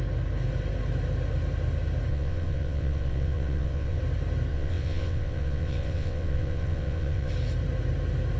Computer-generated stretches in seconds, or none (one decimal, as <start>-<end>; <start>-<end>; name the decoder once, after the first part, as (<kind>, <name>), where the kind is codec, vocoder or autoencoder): 2.1-4.0 (vocoder, WaveNeXt); 4.5-7.3